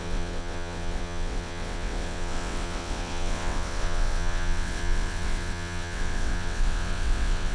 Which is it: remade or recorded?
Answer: remade